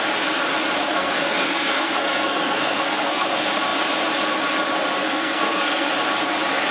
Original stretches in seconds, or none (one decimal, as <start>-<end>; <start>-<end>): 0.0-0.8; 3.3-5.0; 5.9-6.7